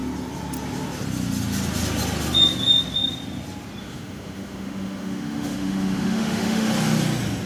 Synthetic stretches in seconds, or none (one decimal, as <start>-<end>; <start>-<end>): 3.8-6.7